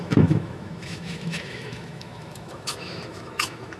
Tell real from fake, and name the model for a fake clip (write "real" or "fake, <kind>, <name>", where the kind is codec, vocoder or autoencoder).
fake, autoencoder, DAC-VAE